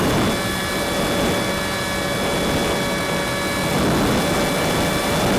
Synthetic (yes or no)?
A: no